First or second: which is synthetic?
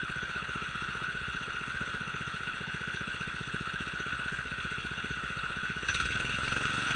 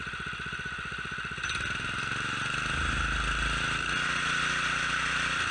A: first